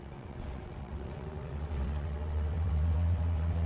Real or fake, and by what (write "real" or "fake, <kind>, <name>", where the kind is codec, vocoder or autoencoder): fake, vocoder, WaveNeXt